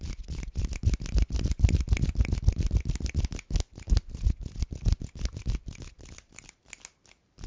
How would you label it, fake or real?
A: real